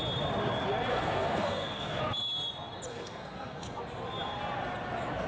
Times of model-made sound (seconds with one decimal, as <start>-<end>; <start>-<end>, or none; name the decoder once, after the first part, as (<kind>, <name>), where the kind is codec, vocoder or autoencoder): 0.9-2.0 (codec, SNAC); 2.9-3.8